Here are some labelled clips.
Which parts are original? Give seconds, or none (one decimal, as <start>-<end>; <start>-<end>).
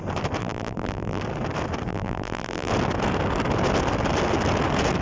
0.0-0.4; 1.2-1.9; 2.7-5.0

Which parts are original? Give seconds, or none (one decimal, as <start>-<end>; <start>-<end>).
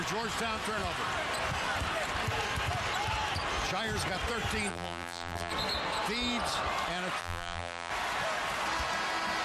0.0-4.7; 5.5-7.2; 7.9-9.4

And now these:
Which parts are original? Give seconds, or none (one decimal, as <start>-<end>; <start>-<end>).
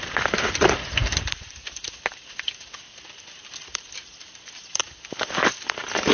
0.0-3.7; 4.8-6.1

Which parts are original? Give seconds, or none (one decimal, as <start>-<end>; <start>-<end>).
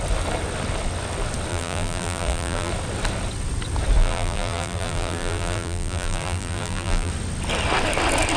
0.0-1.5; 2.7-4.0; 7.1-8.4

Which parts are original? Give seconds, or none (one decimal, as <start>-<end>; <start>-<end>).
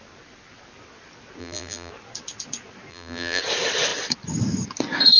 0.0-1.4; 1.9-2.9; 3.4-5.2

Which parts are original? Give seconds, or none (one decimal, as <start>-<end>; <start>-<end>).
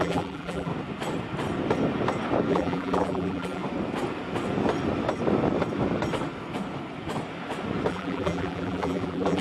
0.7-2.5; 3.6-7.9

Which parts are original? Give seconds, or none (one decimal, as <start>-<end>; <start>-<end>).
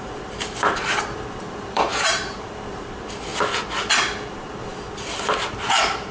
3.3-4.3